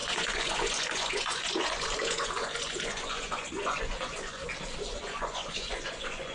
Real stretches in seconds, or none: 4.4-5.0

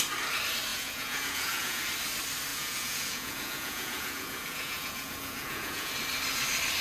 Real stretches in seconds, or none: 0.0-0.7; 1.8-2.5; 5.9-6.8

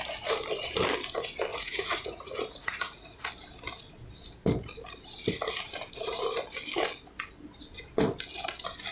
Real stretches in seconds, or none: 0.0-1.5; 3.3-8.9

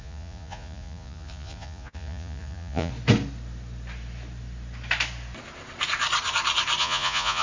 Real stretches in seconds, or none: 2.9-6.8

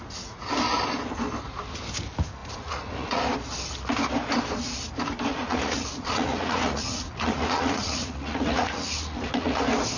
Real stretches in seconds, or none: 0.0-2.4; 3.2-5.3; 9.6-10.0

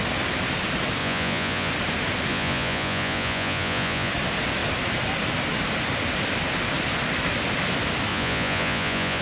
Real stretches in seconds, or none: 0.0-1.0; 1.7-2.3; 4.1-8.1

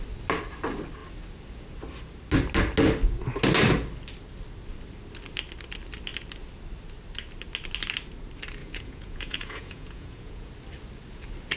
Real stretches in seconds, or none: 0.0-8.6; 10.5-11.6